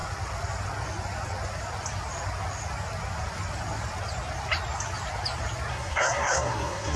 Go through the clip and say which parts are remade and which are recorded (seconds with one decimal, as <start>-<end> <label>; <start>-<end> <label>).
0.0-5.7 recorded; 5.7-7.0 remade